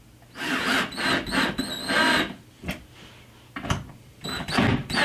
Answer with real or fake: real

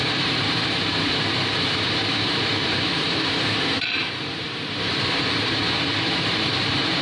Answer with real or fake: fake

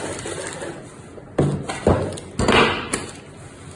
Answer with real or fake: real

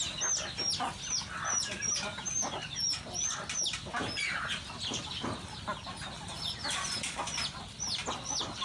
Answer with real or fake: real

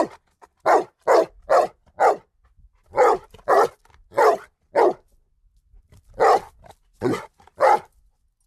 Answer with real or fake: real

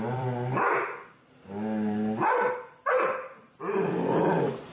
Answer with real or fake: fake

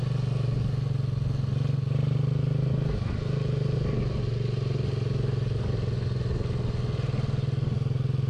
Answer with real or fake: real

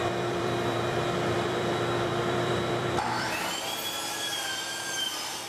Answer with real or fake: fake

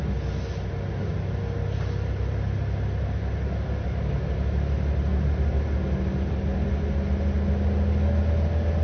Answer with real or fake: real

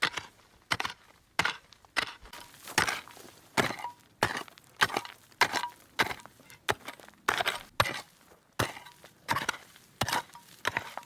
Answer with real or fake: real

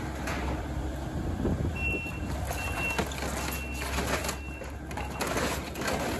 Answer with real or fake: real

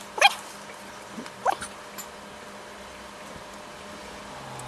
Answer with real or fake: fake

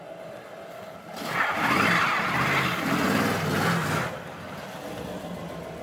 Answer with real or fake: real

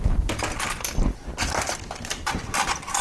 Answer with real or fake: real